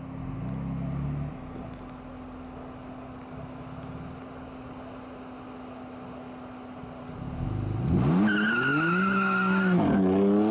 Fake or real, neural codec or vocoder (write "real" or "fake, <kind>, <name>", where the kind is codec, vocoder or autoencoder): real